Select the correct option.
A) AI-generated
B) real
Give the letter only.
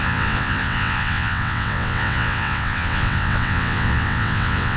A